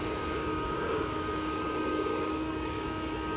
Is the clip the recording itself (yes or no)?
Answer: no